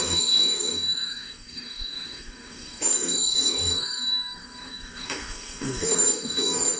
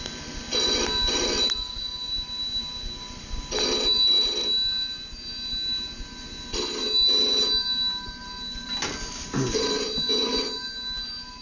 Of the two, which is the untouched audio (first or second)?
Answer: second